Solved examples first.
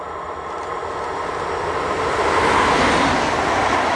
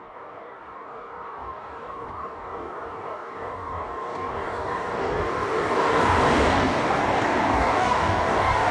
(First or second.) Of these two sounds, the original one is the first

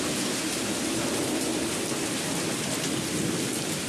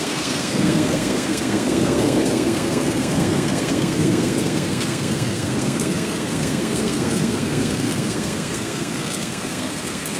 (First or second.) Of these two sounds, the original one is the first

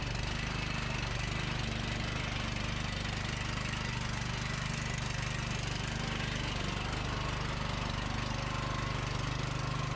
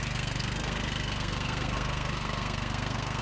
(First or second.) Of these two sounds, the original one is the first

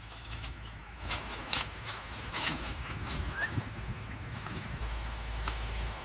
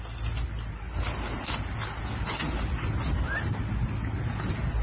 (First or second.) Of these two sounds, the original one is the second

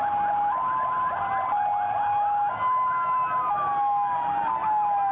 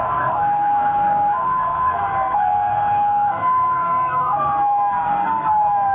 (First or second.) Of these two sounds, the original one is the first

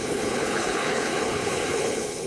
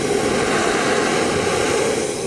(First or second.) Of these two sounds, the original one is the second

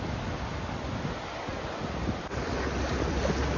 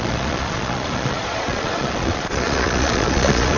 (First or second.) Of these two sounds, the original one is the first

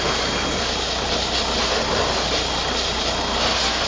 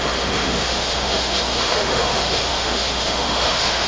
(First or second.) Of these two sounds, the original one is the first